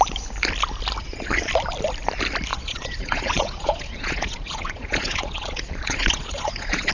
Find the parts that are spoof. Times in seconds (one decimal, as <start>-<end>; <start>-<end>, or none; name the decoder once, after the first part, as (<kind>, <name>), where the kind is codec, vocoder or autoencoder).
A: 1.0-1.5 (vocoder, Vocos); 2.5-6.9